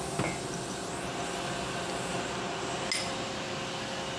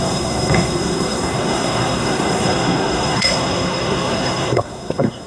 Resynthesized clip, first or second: second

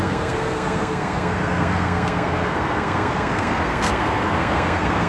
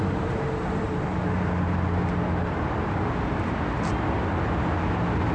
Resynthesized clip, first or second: first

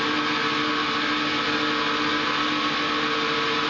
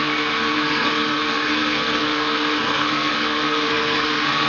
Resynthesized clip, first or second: second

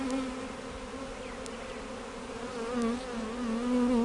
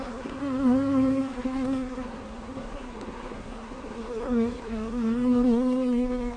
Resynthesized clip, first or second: second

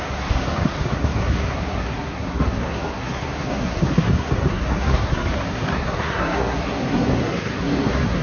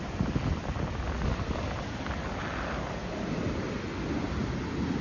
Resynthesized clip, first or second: first